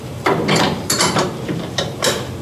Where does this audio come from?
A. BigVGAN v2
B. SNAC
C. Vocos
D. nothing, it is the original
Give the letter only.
A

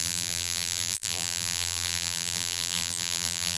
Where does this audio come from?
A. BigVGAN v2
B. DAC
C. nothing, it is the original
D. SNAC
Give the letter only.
A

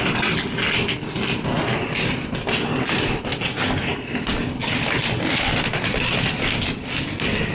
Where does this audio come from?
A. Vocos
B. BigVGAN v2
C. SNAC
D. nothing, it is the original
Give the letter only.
D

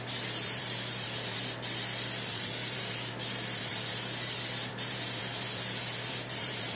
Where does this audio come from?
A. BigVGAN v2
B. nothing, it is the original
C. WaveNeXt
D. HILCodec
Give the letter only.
A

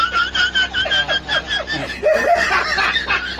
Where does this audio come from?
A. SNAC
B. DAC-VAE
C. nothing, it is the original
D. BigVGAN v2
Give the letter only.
C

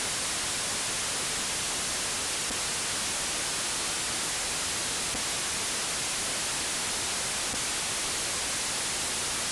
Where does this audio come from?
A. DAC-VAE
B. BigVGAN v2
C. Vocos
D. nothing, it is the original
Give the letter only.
D